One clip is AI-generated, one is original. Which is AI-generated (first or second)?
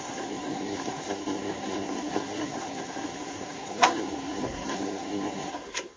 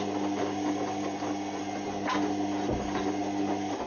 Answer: first